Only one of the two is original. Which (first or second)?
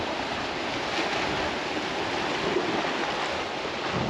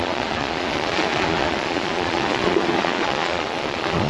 first